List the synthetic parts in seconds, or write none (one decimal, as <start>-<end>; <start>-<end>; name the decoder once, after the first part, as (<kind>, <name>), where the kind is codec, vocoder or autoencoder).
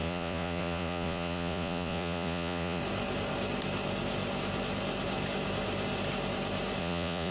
0.0-2.8 (vocoder, Vocos); 6.8-7.3